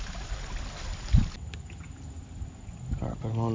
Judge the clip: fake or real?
real